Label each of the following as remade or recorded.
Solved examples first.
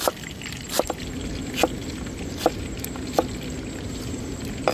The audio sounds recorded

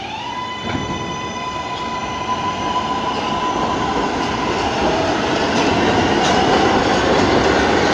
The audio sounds recorded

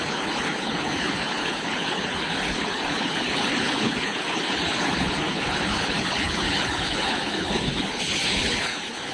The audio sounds remade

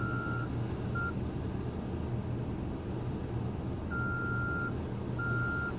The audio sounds recorded